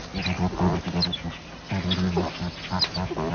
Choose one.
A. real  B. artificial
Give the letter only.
A